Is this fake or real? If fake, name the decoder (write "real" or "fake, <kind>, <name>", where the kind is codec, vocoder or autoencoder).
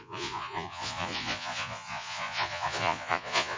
fake, vocoder, Vocos